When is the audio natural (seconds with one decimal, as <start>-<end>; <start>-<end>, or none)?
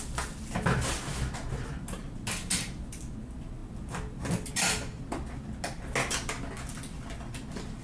0.0-7.8